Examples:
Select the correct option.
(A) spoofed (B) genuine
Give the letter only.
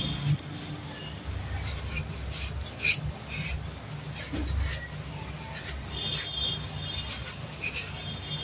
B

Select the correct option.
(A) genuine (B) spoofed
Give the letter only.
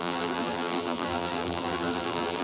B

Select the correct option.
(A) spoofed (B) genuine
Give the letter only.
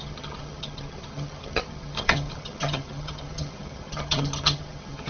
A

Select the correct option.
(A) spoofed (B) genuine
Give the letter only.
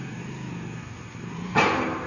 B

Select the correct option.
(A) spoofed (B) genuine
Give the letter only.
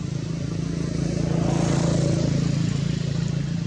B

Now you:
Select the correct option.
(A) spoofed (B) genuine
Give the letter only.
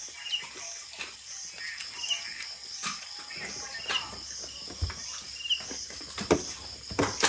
B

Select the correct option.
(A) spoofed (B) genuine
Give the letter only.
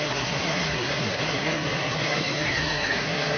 A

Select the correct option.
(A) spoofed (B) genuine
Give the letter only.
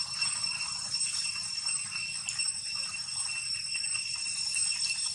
B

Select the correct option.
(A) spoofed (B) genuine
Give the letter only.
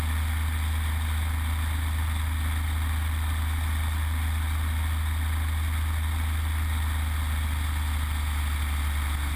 B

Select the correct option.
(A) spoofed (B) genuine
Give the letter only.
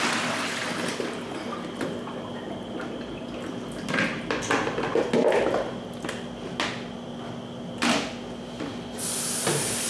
B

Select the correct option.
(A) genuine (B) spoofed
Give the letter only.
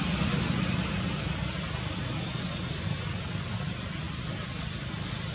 A